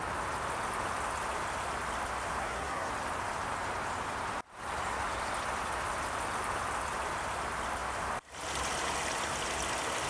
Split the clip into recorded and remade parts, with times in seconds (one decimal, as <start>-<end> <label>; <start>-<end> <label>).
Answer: 0.0-2.4 recorded; 2.4-2.9 remade; 2.9-10.1 recorded